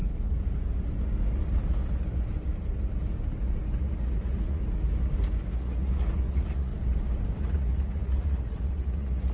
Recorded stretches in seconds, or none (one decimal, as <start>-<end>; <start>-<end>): 0.0-3.8; 4.6-5.4; 6.7-7.4